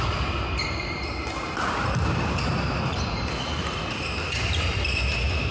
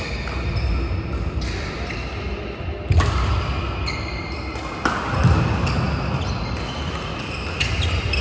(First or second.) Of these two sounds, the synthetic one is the first